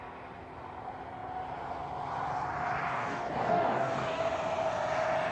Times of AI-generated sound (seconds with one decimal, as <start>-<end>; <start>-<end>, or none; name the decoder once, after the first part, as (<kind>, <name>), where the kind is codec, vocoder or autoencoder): 2.9-4.2 (codec, DAC)